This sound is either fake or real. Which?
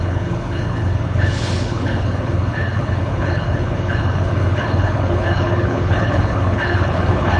fake